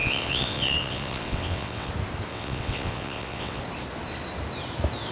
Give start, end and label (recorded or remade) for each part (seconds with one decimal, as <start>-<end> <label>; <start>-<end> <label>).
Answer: 0.0-1.9 remade; 1.9-2.3 recorded; 2.3-3.6 remade; 3.6-5.1 recorded